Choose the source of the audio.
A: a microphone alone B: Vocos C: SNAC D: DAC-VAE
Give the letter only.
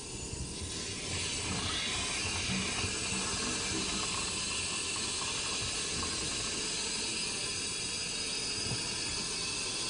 A